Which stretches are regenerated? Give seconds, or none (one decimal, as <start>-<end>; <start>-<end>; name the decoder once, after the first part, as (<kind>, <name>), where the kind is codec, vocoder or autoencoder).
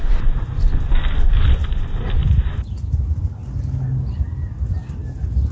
none